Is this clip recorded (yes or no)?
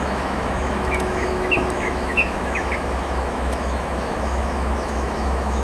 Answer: no